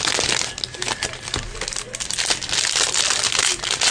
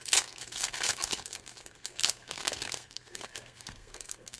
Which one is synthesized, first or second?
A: second